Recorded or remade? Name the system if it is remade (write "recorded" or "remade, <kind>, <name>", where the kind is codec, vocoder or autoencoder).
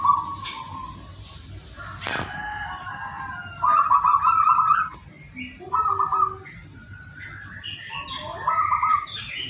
recorded